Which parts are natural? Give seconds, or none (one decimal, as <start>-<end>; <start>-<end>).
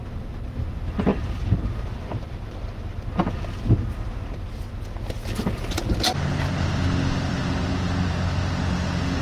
0.0-1.1; 2.8-9.2